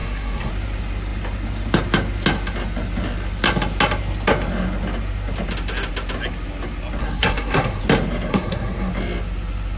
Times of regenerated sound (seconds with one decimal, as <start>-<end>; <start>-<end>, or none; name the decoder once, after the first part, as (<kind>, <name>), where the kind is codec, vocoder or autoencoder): 0.0-0.5 (codec, SNAC); 7.0-7.8; 8.3-8.9